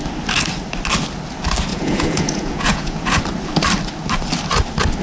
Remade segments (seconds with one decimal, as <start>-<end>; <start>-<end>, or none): 1.7-3.2